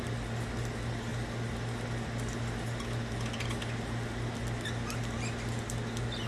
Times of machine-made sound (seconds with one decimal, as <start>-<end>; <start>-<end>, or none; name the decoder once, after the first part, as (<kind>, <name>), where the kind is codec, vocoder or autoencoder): none